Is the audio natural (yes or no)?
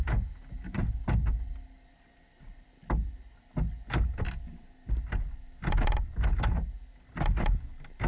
yes